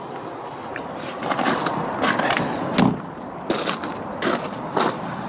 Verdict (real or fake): real